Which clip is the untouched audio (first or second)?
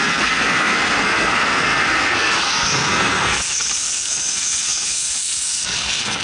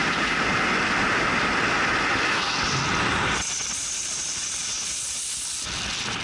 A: second